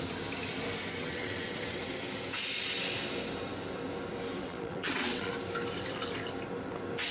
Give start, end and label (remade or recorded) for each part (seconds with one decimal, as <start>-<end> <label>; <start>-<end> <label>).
0.0-1.0 recorded; 1.0-1.8 remade; 1.8-4.4 recorded; 4.4-5.3 remade; 5.3-7.1 recorded